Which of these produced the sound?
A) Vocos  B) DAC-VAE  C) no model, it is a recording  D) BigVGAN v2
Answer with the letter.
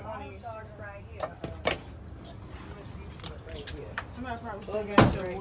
C